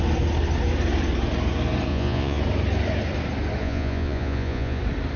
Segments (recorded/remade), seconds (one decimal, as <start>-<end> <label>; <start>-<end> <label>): 0.0-1.9 recorded; 1.9-2.4 remade; 2.4-3.6 recorded; 3.6-4.8 remade; 4.8-5.2 recorded